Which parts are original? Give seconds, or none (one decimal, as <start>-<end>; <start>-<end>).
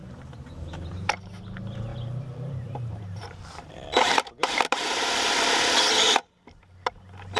1.1-1.9; 4.6-7.4